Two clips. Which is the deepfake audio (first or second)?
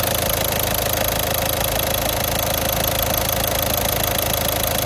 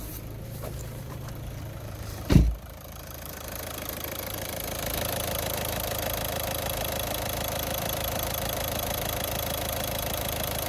second